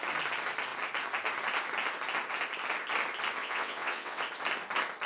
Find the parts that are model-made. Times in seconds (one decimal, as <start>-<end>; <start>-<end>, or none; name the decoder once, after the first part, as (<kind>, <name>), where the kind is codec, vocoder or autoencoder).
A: 3.4-4.2 (vocoder, WaveNeXt)